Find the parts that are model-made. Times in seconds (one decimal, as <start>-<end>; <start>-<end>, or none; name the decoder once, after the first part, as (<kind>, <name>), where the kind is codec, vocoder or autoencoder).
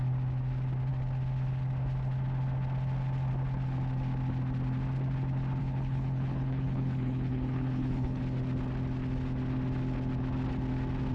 5.6-8.2 (codec, HILCodec)